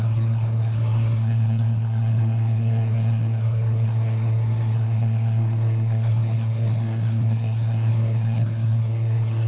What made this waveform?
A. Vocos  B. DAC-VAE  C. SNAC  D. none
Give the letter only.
C